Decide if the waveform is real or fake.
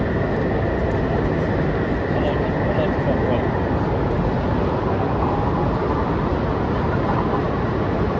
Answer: real